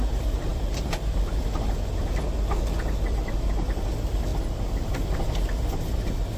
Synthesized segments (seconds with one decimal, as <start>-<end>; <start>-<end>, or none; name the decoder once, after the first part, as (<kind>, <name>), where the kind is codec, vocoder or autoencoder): 0.5-1.3 (vocoder, BigVGAN v2)